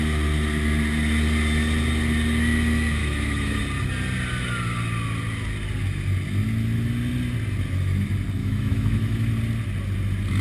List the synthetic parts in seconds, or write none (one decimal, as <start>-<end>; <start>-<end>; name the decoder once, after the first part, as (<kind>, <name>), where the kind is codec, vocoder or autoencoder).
3.0-3.6 (autoencoder, DAC-VAE); 8.4-9.3